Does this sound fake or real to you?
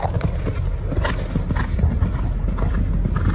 real